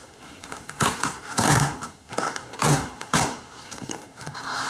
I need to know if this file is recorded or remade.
remade